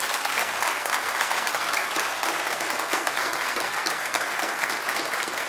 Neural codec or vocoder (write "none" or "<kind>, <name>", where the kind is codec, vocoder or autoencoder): codec, SNAC